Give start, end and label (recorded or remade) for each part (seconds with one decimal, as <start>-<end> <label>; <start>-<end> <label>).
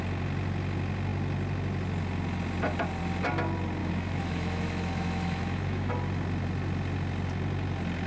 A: 0.0-3.8 recorded; 3.8-5.9 remade; 5.9-8.1 recorded